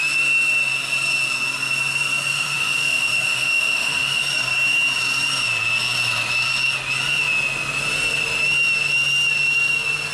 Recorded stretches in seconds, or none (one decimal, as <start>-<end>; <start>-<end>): 0.0-2.3; 4.2-10.1